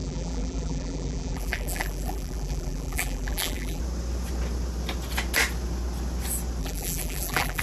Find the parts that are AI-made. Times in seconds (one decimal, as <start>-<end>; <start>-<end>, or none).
0.0-3.8; 6.6-7.6